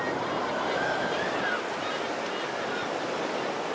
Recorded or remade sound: recorded